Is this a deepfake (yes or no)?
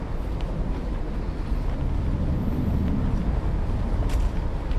no